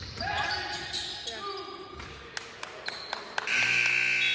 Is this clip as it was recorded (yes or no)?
yes